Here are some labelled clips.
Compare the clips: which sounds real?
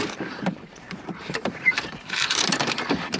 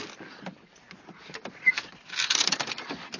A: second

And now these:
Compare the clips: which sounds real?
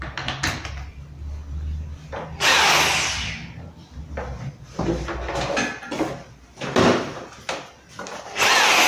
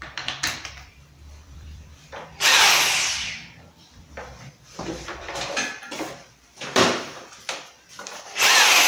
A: first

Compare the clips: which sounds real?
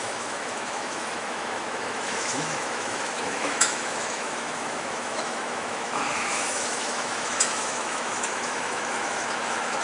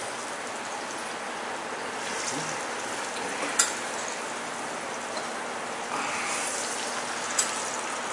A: second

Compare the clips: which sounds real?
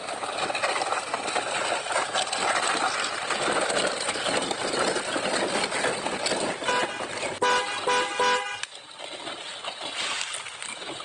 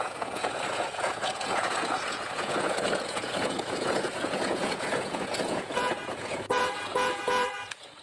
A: first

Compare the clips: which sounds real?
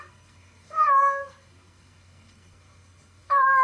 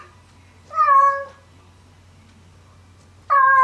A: second